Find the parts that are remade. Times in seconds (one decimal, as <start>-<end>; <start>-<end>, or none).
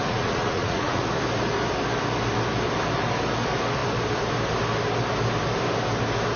0.0-1.0